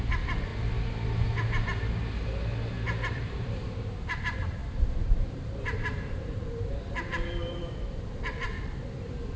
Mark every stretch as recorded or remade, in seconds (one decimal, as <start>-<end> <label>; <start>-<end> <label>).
0.0-0.5 remade; 0.5-3.1 recorded; 3.1-8.5 remade; 8.5-9.4 recorded

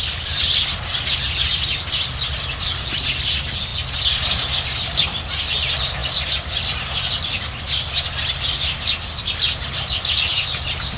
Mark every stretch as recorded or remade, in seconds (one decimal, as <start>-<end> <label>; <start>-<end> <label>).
0.0-11.0 recorded

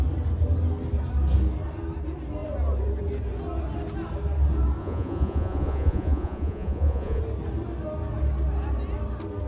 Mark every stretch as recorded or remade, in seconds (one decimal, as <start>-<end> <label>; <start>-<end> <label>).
0.0-4.8 recorded; 4.8-7.2 remade; 7.2-9.5 recorded

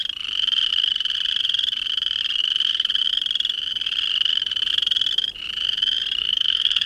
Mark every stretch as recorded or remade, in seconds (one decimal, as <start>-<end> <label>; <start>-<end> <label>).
0.0-6.2 recorded; 6.2-6.9 remade

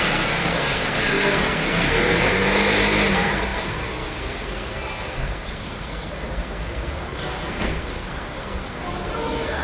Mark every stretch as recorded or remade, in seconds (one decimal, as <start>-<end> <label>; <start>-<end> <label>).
0.0-2.4 remade; 2.4-3.1 recorded; 3.1-9.6 remade

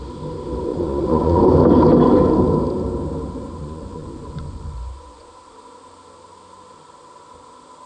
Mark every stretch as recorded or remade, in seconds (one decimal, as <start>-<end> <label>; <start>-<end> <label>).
0.0-0.7 recorded; 0.7-1.4 remade; 1.4-3.6 recorded; 3.6-5.3 remade; 5.3-7.9 recorded

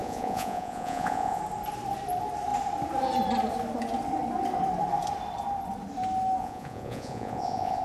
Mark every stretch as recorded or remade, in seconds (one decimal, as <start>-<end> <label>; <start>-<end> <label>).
0.0-1.4 remade; 1.4-6.4 recorded; 6.4-7.8 remade

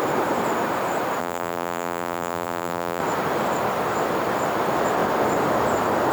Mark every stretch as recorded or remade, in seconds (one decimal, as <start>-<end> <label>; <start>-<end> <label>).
0.0-1.2 recorded; 1.2-3.0 remade; 3.0-6.1 recorded